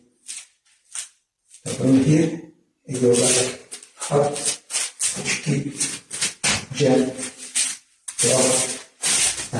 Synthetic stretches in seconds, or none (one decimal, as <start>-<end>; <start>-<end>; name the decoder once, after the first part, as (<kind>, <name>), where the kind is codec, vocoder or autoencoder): none